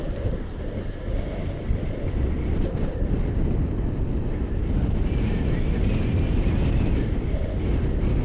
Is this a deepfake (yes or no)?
no